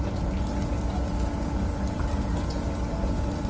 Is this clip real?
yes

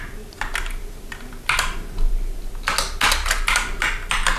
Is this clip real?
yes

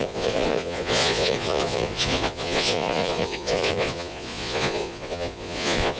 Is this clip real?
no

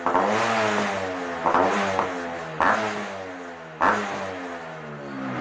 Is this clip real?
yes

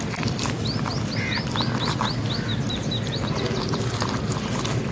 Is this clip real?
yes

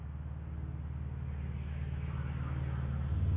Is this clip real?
yes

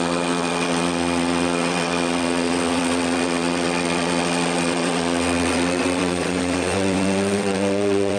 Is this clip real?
no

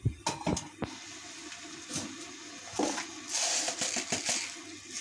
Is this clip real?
yes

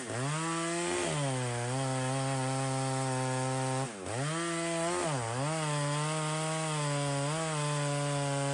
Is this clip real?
yes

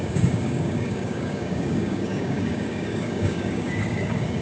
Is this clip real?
no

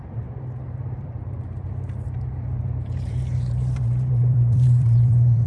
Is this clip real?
no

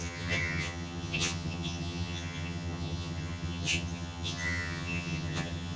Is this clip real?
no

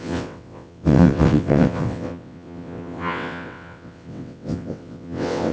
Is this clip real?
no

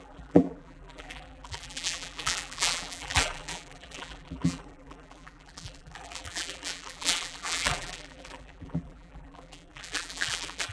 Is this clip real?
no